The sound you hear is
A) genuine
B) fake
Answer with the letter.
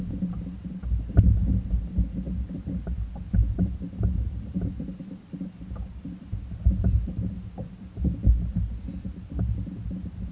A